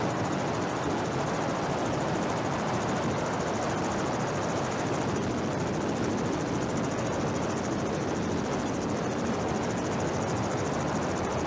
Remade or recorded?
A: recorded